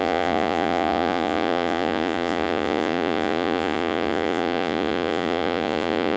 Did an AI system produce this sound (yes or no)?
yes